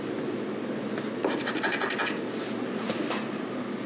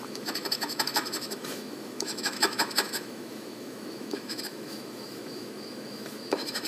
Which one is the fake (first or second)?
second